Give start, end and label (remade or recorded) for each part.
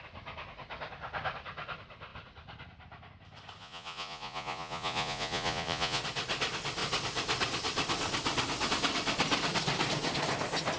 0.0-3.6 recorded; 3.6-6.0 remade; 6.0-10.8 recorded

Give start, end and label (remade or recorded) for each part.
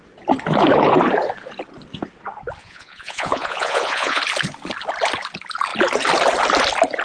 0.0-2.6 recorded; 2.6-4.2 remade; 4.2-7.0 recorded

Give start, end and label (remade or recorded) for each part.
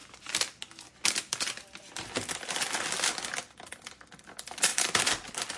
0.0-5.6 recorded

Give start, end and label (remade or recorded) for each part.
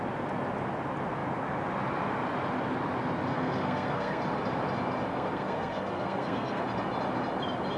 0.0-3.3 recorded; 3.3-4.2 remade; 4.2-5.1 recorded; 5.1-6.6 remade; 6.6-7.8 recorded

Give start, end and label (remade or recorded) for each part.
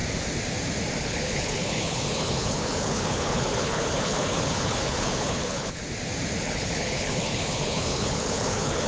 0.0-1.0 recorded; 1.0-5.8 remade; 5.8-6.4 recorded; 6.4-8.9 remade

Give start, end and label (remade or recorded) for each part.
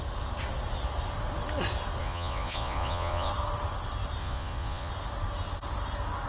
0.0-2.0 recorded; 2.0-3.3 remade; 3.3-4.2 recorded; 4.2-4.9 remade; 4.9-6.3 recorded